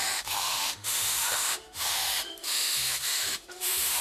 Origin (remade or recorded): remade